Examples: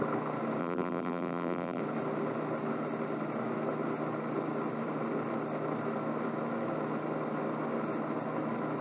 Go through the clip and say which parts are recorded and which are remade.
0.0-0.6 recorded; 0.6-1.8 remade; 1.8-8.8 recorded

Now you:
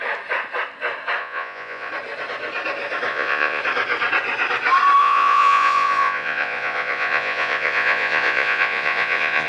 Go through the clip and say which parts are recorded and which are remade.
0.0-1.2 recorded; 1.2-1.9 remade; 1.9-3.1 recorded; 3.1-3.6 remade; 3.6-5.0 recorded; 5.0-9.5 remade

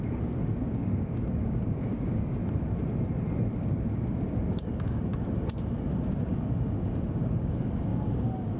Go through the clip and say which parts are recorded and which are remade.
0.0-2.4 remade; 2.4-3.6 recorded; 3.6-5.1 remade; 5.1-6.1 recorded; 6.1-8.6 remade

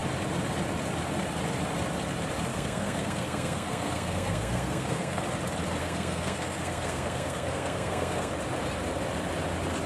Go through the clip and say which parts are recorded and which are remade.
0.0-2.5 recorded; 2.5-5.2 remade; 5.2-5.8 recorded; 5.8-8.3 remade; 8.3-9.9 recorded